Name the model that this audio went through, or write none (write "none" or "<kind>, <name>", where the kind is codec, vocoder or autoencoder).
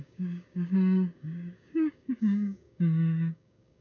codec, DAC